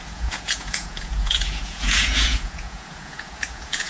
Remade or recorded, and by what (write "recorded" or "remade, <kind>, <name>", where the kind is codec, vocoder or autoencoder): remade, vocoder, Vocos